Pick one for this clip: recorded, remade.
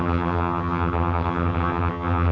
remade